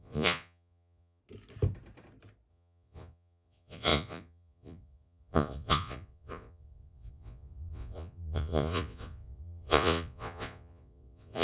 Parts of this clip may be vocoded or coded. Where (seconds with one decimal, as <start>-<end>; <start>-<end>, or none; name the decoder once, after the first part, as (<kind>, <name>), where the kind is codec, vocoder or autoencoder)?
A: 0.0-1.2 (vocoder, Vocos); 2.5-11.4